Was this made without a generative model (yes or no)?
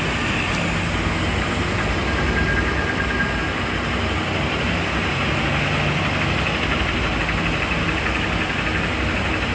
yes